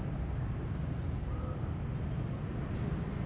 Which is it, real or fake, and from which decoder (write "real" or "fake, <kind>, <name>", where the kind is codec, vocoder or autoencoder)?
real